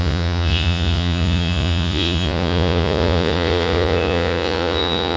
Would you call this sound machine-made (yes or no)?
yes